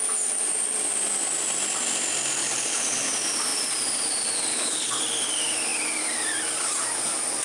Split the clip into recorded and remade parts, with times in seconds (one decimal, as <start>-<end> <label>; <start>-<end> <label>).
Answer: 0.0-2.4 recorded; 2.4-3.1 remade; 3.1-4.5 recorded; 4.5-5.0 remade; 5.0-7.4 recorded

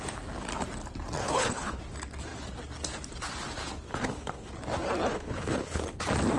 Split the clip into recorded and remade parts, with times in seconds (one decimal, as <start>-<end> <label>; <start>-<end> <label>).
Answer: 0.0-1.2 recorded; 1.2-1.8 remade; 1.8-3.9 recorded; 3.9-4.5 remade; 4.5-5.1 recorded; 5.1-5.8 remade; 5.8-6.4 recorded